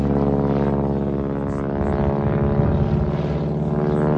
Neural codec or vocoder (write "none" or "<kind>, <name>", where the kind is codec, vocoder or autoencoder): none